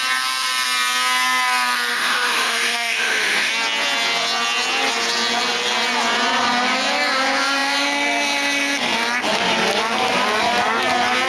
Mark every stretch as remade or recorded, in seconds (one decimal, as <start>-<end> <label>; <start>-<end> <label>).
0.0-1.9 recorded; 1.9-3.5 remade; 3.5-11.3 recorded